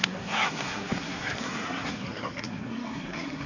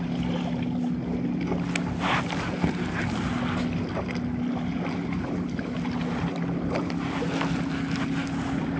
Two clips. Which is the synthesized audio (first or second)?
first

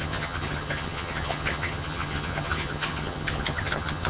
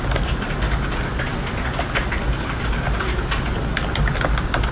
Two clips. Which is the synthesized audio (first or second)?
first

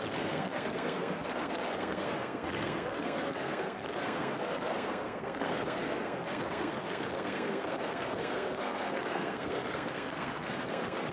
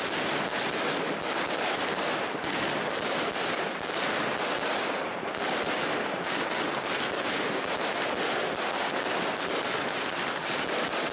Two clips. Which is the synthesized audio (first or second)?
first